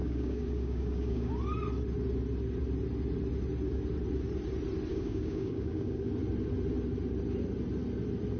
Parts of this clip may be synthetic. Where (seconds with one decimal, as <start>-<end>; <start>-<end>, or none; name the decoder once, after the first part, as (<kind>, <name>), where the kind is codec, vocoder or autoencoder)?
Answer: 0.0-1.3 (codec, DAC); 4.9-6.1